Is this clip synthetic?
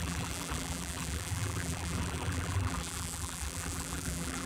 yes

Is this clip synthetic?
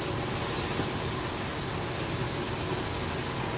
no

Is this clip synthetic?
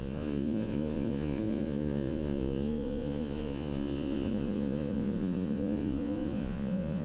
yes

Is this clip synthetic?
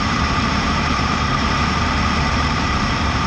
yes